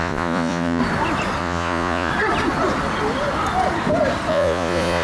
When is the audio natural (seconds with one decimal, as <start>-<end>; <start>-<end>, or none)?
0.8-1.4; 2.1-4.3